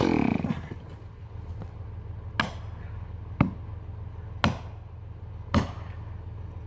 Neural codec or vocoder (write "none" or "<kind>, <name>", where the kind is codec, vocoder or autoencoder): none